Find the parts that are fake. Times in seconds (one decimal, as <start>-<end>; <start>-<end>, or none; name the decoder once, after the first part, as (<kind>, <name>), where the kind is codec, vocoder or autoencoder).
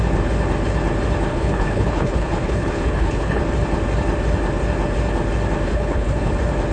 1.3-3.4 (codec, HILCodec); 5.7-6.3